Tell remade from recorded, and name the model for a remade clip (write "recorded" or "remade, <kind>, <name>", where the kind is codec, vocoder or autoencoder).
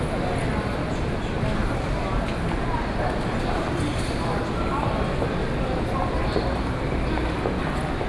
recorded